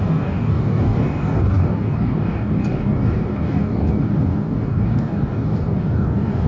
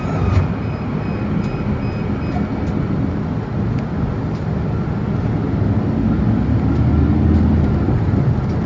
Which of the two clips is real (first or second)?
second